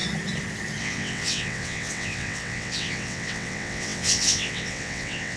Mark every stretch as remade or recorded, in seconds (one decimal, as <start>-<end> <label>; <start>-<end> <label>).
0.0-0.8 recorded; 0.8-5.4 remade